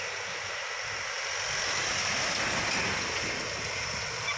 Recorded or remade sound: recorded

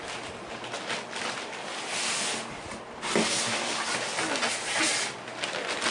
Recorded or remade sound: recorded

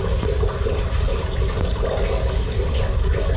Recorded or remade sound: recorded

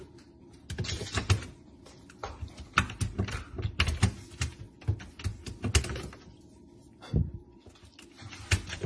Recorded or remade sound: recorded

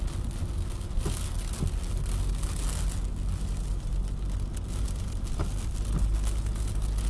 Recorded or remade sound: recorded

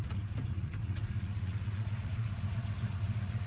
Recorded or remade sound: remade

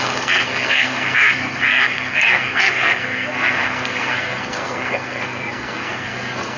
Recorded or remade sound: remade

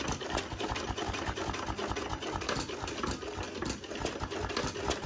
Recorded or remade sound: recorded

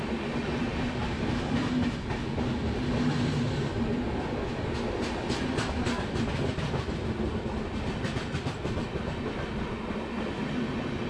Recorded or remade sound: recorded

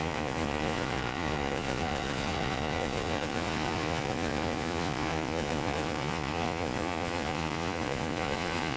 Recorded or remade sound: remade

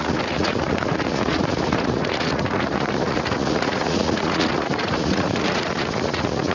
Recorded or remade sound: remade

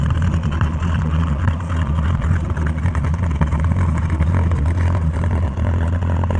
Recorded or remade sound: remade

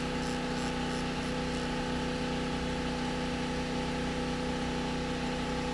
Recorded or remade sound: recorded